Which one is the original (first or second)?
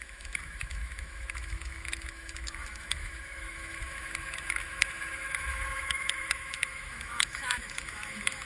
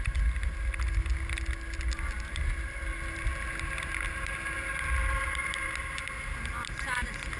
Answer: second